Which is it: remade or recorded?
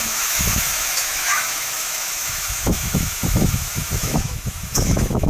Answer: remade